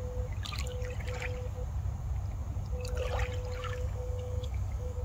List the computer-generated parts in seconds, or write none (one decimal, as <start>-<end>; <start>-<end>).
3.6-5.0